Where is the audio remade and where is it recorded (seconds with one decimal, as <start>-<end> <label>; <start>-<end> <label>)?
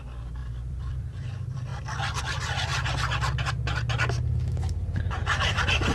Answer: 0.0-1.7 remade; 1.7-2.2 recorded; 2.2-2.7 remade; 2.7-5.2 recorded; 5.2-5.9 remade